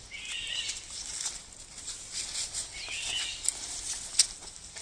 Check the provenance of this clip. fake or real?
real